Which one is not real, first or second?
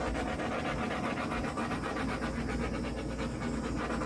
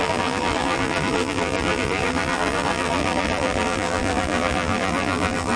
second